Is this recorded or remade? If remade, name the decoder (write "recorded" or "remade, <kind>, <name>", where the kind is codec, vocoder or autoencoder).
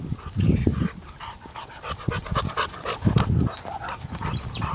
recorded